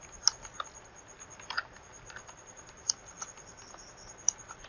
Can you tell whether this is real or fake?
real